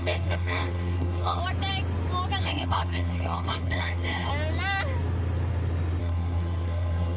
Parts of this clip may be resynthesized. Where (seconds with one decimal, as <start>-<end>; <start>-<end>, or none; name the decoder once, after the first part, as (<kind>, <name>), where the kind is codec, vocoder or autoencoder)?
0.0-1.4 (codec, SNAC); 2.4-4.3; 6.0-7.2